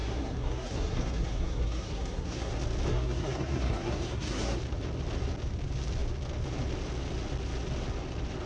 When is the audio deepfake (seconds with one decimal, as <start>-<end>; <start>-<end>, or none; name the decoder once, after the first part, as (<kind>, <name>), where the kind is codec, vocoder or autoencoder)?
0.0-2.5 (codec, SNAC); 2.9-4.6